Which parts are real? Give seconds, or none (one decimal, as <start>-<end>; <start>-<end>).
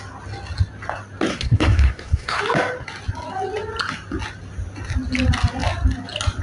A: 0.0-1.3; 2.4-6.4